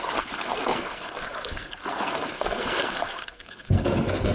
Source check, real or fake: fake